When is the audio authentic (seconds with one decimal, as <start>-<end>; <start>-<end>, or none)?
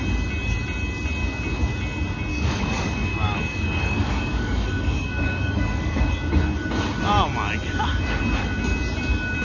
0.0-2.3; 6.0-9.4